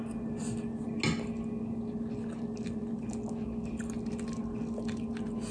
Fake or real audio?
real